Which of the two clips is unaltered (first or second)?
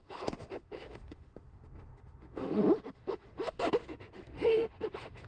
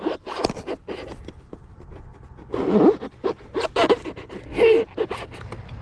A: second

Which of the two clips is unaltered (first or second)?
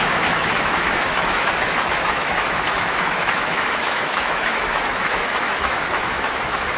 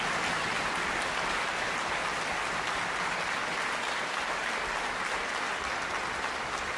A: second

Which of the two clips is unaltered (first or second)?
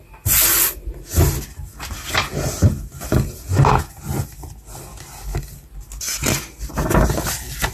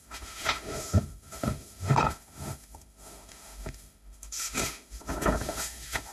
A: first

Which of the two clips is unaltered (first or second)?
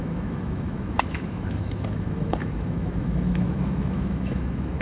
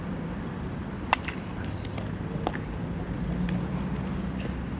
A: second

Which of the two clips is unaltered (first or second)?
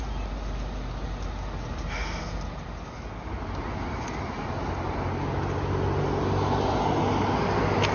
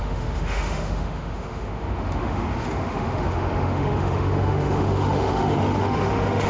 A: first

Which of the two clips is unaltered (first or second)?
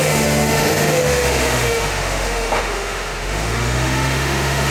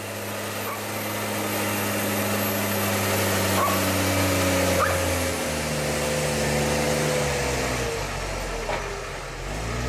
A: second